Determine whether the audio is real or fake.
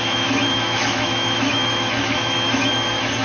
fake